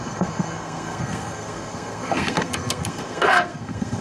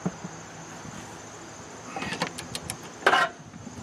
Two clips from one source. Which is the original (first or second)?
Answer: second